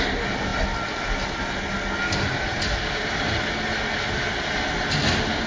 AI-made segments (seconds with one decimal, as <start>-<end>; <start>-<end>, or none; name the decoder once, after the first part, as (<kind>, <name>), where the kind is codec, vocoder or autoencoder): none

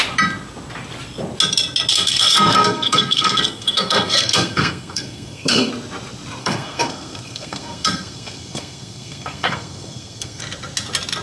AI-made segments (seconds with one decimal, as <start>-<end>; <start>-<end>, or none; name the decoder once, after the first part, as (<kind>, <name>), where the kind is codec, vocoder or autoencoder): 1.9-5.7 (codec, SNAC); 6.4-10.4

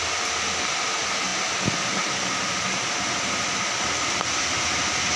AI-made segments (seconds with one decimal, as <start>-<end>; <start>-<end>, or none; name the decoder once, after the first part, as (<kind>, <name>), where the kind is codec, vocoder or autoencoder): none

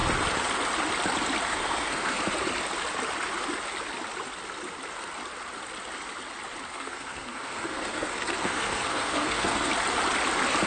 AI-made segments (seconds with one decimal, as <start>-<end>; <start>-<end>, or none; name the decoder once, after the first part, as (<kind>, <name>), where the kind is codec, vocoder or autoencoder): 1.5-2.2 (codec, SNAC); 6.7-9.7

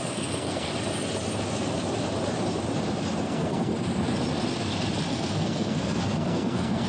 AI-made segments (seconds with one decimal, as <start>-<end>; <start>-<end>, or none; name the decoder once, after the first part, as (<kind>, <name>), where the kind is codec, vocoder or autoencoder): 0.0-0.7 (codec, SNAC); 3.2-3.7; 5.1-6.9

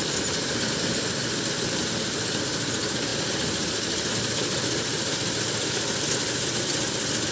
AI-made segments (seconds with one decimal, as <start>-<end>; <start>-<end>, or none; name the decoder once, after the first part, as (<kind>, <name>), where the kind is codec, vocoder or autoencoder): 0.0-3.1 (vocoder, BigVGAN v2); 4.1-4.9; 5.4-7.3

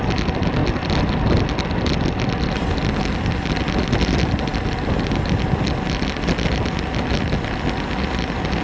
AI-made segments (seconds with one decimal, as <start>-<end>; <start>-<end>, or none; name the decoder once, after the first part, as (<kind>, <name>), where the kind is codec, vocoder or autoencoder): none